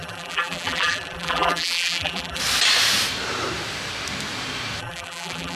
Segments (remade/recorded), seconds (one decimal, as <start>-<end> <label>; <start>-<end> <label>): 0.0-2.4 remade; 2.4-4.8 recorded; 4.8-5.6 remade